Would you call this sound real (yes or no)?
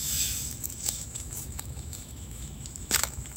no